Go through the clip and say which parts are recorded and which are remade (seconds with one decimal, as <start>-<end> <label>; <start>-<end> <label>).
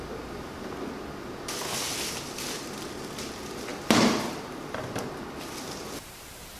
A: 0.0-3.7 recorded; 3.7-5.1 remade; 5.1-6.6 recorded